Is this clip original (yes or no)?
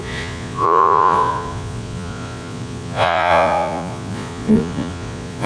no